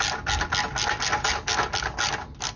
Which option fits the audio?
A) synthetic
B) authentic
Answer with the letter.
B